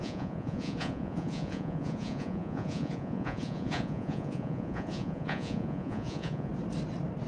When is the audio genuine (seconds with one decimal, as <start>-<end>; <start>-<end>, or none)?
6.5-7.3